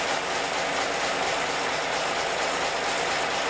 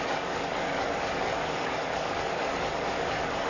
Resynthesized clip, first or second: second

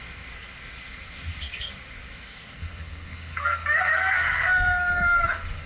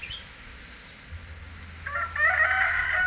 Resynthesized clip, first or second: first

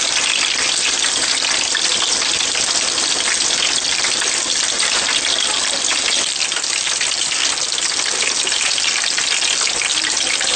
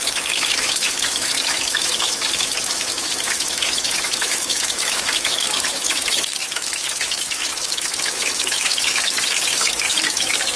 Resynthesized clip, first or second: second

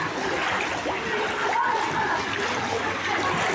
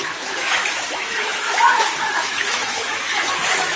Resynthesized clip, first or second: second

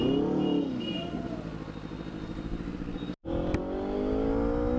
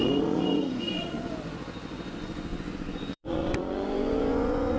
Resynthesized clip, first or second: second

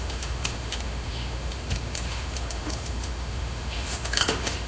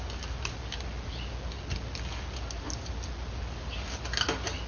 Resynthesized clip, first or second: first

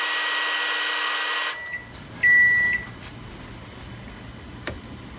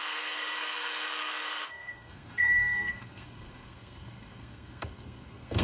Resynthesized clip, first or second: second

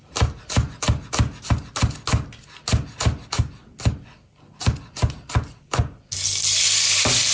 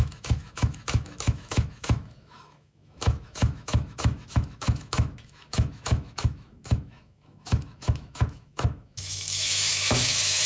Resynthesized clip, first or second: second